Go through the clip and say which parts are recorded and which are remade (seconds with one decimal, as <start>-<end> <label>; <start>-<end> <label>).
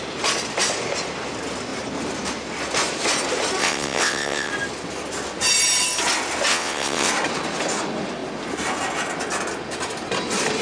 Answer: 0.0-3.6 recorded; 3.6-4.5 remade; 4.5-6.5 recorded; 6.5-7.1 remade; 7.1-10.6 recorded